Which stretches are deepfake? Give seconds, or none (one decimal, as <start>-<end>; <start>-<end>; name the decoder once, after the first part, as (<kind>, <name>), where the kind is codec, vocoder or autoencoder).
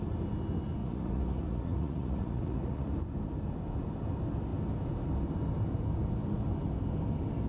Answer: 0.8-2.9 (vocoder, Vocos)